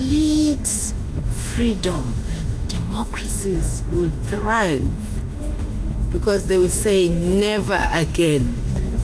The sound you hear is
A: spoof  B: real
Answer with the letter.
A